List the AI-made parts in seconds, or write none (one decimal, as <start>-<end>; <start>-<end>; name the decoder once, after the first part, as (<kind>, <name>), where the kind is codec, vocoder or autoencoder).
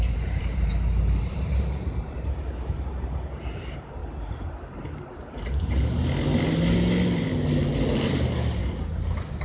0.0-0.7 (vocoder, BigVGAN v2); 1.2-4.0; 8.1-8.6